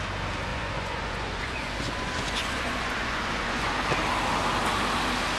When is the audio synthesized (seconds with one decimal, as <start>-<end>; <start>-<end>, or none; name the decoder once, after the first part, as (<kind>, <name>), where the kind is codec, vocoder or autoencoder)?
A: 0.5-3.7 (vocoder, Vocos)